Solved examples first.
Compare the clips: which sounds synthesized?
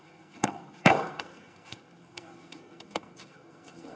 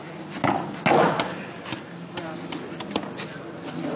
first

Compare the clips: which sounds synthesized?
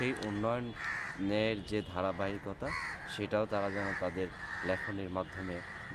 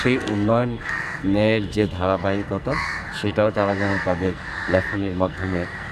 second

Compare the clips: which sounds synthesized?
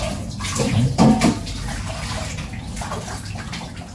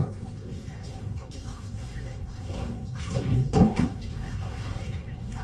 second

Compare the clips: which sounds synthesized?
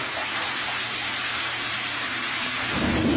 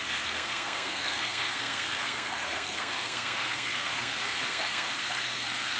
second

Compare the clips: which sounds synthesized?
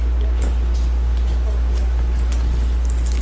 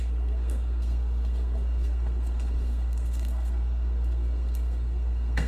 second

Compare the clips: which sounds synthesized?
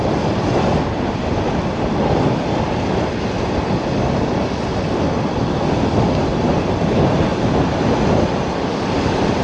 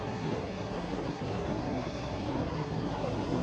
second